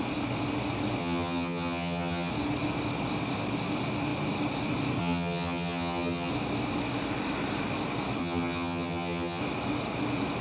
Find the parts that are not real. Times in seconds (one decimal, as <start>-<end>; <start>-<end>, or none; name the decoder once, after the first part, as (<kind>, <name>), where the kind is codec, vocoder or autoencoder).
1.0-2.3 (vocoder, HiFi-GAN); 5.0-6.3; 8.2-9.4